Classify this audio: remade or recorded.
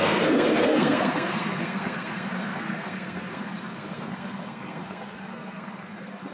remade